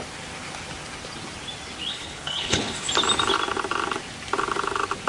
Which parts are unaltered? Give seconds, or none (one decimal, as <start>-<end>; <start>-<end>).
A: 0.0-1.9; 2.9-5.1